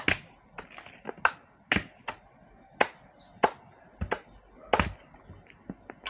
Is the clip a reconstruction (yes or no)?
no